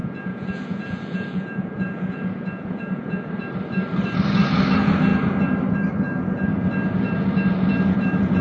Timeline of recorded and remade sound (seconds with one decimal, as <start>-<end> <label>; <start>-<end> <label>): 0.0-3.3 remade; 3.3-8.4 recorded